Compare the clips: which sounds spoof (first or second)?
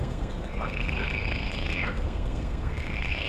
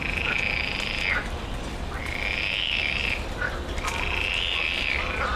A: first